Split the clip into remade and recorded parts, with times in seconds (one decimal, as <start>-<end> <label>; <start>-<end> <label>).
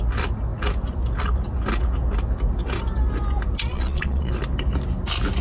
0.0-3.7 recorded; 3.7-4.3 remade; 4.3-5.4 recorded